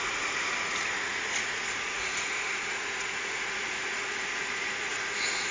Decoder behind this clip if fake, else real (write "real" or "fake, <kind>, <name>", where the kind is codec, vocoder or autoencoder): fake, vocoder, Vocos